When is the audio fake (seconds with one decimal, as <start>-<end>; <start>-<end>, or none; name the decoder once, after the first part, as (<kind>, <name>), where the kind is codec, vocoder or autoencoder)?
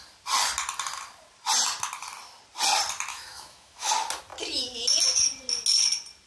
3.1-3.9 (autoencoder, DAC-VAE)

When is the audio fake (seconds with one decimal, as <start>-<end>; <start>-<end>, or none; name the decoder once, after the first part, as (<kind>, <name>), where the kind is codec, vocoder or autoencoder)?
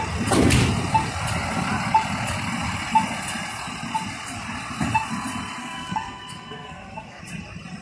5.6-7.2 (codec, SNAC)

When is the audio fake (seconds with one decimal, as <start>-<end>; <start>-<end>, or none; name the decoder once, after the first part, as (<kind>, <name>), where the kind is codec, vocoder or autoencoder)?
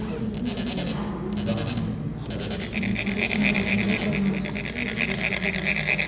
none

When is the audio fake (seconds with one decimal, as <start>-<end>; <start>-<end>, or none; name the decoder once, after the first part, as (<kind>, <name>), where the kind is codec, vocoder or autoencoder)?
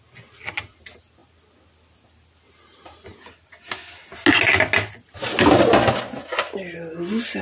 none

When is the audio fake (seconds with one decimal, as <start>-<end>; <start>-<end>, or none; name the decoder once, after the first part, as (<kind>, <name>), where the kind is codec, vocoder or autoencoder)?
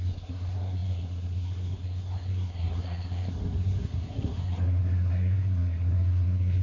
0.0-6.6 (codec, SNAC)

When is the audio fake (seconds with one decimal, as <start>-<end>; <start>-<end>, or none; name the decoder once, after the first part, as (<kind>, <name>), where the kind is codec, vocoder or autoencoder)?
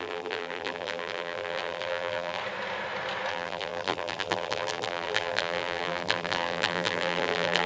0.0-2.4 (vocoder, BigVGAN v2); 3.3-7.7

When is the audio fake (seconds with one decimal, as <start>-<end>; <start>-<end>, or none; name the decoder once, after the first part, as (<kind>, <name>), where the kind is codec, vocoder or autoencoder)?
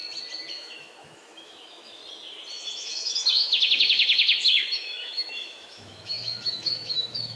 0.5-2.0 (autoencoder, DAC-VAE); 2.5-7.4